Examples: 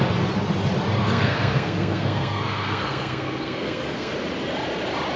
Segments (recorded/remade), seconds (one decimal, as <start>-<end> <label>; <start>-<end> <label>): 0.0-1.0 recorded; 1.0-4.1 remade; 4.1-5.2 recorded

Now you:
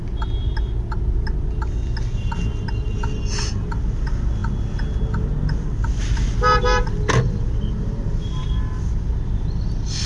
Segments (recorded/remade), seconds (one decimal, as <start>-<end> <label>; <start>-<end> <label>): 0.0-10.1 recorded

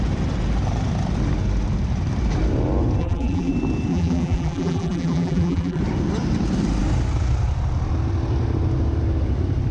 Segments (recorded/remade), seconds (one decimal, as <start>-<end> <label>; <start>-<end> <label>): 0.0-3.0 recorded; 3.0-3.5 remade; 3.5-3.9 recorded; 3.9-5.8 remade; 5.8-9.7 recorded

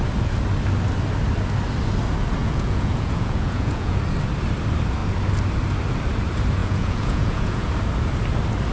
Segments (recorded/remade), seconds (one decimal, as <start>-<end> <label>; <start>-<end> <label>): 0.0-2.4 recorded; 2.4-4.0 remade; 4.0-6.6 recorded; 6.6-7.7 remade; 7.7-8.7 recorded

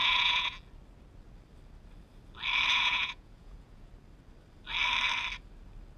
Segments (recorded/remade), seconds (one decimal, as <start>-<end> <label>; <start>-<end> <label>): 0.0-0.5 remade; 0.5-2.7 recorded; 2.7-3.9 remade; 3.9-6.0 recorded